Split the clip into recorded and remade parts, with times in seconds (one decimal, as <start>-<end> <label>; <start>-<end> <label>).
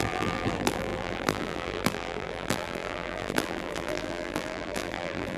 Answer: 0.0-5.4 remade